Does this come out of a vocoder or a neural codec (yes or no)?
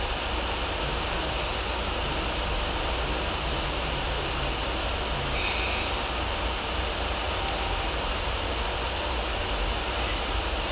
no